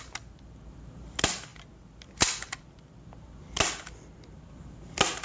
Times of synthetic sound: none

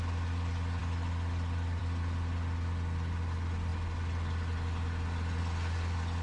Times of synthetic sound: none

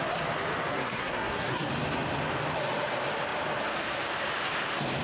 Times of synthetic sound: 0.7-1.7

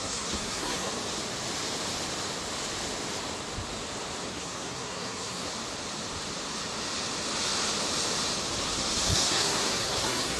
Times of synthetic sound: 0.0-0.9; 4.3-5.5; 8.6-10.4

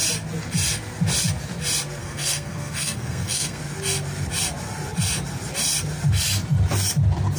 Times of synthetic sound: 2.0-3.6

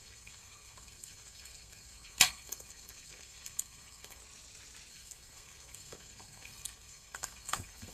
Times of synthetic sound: 0.0-4.2; 4.9-7.9

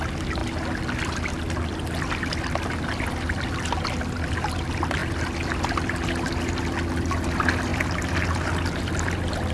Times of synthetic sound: none

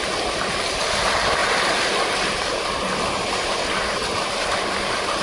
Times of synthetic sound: none